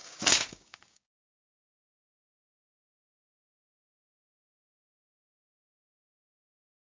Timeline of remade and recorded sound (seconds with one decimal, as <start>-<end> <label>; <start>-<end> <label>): 0.0-1.5 remade; 1.5-6.8 recorded